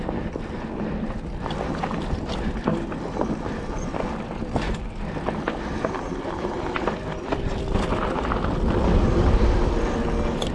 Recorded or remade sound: recorded